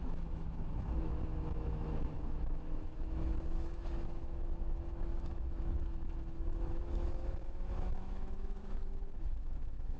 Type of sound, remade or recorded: remade